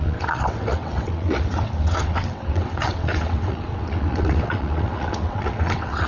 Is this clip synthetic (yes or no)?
yes